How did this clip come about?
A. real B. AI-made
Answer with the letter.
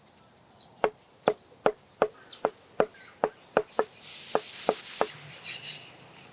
A